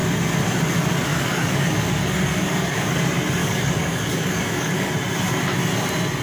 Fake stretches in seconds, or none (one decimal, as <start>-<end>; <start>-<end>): 1.1-3.0; 3.4-4.9